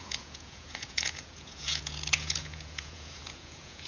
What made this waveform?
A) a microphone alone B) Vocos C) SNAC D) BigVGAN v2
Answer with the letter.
B